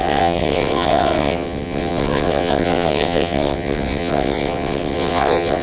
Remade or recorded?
remade